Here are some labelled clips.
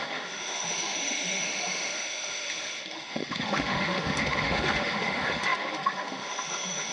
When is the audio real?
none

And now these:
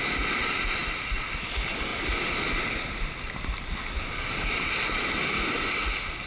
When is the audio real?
0.0-6.3

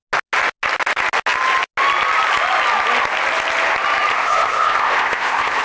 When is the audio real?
0.0-4.1

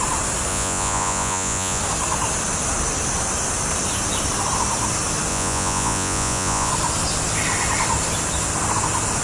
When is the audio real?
0.0-0.5; 1.8-5.3; 6.7-9.2

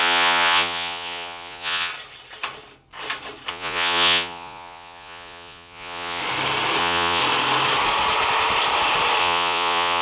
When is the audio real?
1.9-3.5; 6.2-6.8; 7.2-9.2

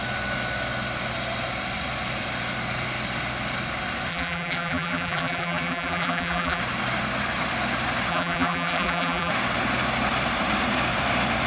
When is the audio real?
0.0-4.1; 6.6-8.1; 9.3-11.5

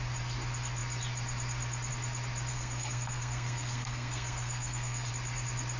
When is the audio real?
0.0-2.5; 5.1-5.8